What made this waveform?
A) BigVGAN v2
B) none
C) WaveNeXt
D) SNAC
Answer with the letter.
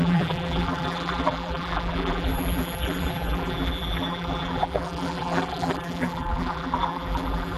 A